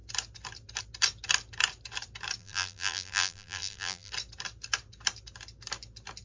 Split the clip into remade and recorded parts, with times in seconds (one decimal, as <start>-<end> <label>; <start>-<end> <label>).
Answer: 0.0-2.4 recorded; 2.4-4.1 remade; 4.1-6.2 recorded